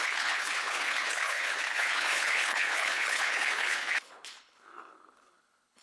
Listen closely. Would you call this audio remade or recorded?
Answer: remade